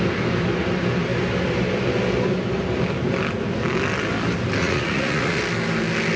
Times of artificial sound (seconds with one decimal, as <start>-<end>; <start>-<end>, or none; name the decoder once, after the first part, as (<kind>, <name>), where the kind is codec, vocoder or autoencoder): 4.6-5.4 (vocoder, Vocos)

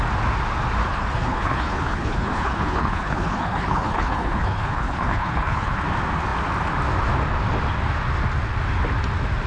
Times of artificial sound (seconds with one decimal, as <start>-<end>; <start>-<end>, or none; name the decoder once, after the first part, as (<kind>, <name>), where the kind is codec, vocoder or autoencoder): 0.8-5.8 (codec, HILCodec)

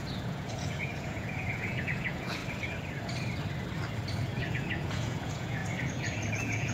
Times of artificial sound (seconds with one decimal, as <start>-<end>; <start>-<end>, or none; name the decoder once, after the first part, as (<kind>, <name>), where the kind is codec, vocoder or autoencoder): 0.0-2.4 (vocoder, Vocos); 4.4-5.6; 6.3-6.7